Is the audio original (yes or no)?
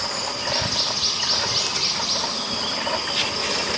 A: yes